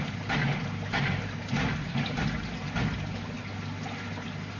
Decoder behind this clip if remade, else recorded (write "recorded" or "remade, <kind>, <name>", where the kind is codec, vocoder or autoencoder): recorded